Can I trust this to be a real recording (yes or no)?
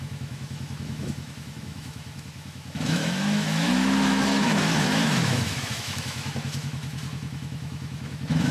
no